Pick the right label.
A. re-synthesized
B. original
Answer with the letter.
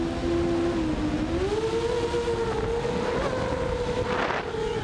B